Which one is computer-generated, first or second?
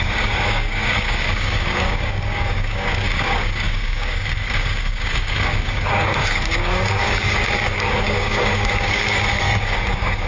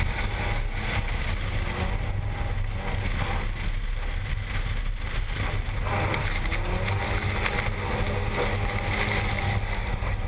first